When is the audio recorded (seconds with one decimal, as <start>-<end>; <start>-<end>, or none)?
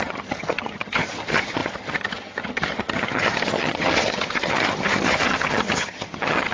none